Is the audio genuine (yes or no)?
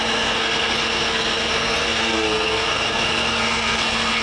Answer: no